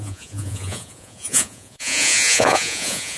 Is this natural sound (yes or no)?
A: no